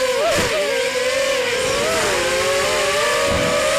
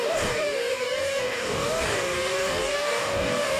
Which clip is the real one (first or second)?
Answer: first